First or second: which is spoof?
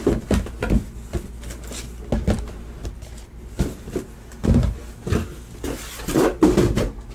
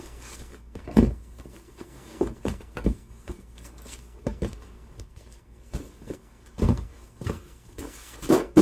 second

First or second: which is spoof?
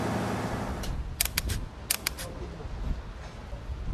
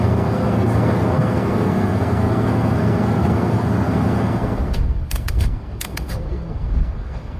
second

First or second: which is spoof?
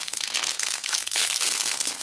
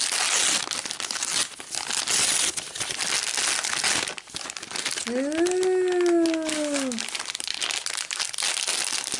first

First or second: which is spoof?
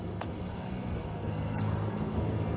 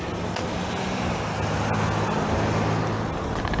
first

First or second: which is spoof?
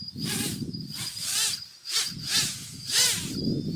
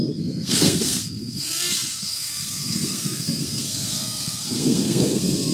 second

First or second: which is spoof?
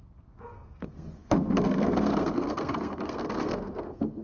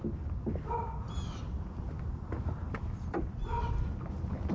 first